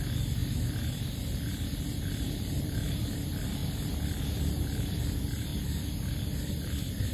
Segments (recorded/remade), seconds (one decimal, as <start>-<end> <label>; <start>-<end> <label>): 0.0-0.4 remade; 0.4-2.1 recorded; 2.1-3.6 remade; 3.6-5.0 recorded; 5.0-5.5 remade; 5.5-6.5 recorded; 6.5-7.1 remade